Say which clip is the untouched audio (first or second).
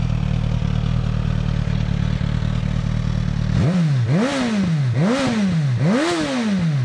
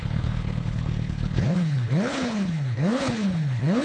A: first